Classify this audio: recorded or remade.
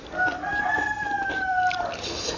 remade